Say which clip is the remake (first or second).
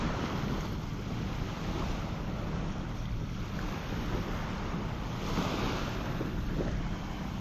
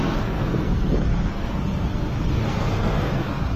second